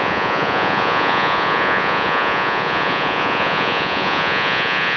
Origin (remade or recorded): remade